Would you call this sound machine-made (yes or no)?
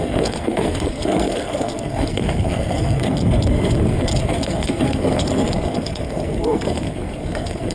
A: yes